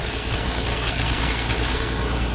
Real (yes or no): no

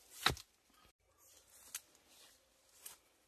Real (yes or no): yes